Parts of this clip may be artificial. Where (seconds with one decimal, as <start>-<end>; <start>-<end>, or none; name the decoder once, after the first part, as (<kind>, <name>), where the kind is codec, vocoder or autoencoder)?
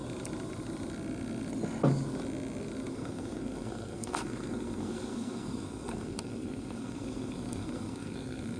2.9-8.6 (codec, SNAC)